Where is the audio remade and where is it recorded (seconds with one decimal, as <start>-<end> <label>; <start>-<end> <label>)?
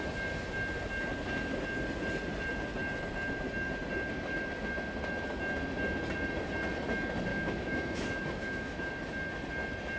0.0-7.3 recorded; 7.3-8.9 remade; 8.9-10.0 recorded